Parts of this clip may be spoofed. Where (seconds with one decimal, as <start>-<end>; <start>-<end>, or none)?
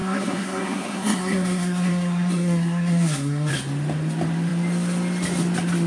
0.0-3.5